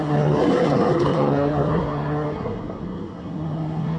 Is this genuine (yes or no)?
no